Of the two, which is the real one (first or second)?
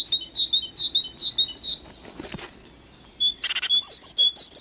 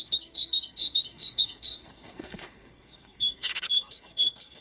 first